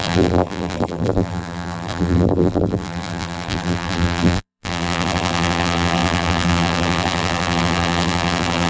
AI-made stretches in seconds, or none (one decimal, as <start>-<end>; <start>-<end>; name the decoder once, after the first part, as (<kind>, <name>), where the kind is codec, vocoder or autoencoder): 0.0-8.7 (vocoder, BigVGAN v2)